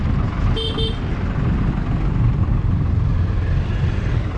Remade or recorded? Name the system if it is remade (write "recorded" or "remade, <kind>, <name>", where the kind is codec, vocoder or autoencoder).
recorded